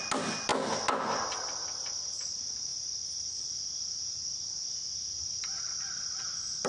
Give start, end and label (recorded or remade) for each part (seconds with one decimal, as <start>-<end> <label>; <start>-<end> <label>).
0.0-6.7 recorded